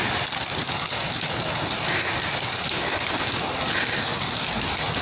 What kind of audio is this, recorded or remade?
recorded